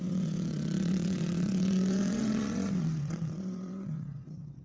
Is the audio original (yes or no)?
no